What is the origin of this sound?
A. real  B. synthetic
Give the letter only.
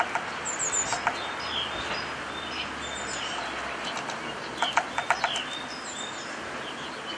A